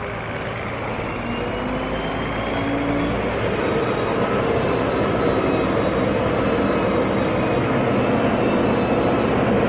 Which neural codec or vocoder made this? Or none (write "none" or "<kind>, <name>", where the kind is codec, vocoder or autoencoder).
none